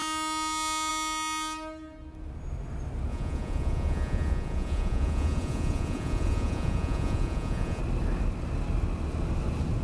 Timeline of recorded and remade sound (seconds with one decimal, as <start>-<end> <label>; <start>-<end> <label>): 0.0-3.1 recorded; 3.1-7.8 remade; 7.8-9.8 recorded